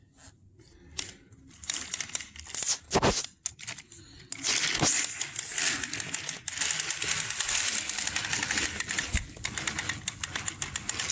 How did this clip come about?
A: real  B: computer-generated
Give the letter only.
A